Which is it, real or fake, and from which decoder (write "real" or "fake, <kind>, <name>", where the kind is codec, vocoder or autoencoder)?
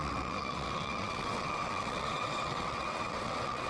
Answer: fake, vocoder, WaveNeXt